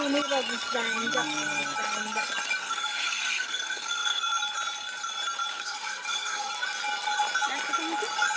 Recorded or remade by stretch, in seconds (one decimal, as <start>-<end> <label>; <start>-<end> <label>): 0.0-2.6 recorded; 2.6-4.2 remade; 4.2-5.5 recorded; 5.5-6.5 remade; 6.5-8.4 recorded